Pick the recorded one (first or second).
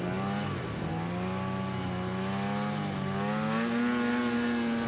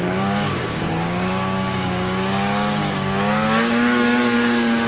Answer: first